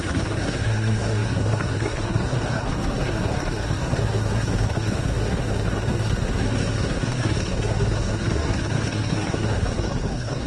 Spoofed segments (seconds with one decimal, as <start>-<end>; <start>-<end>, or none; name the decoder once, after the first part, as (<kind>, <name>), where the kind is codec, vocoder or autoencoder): 0.0-10.5 (codec, SNAC)